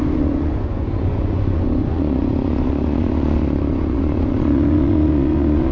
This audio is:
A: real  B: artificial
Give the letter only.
B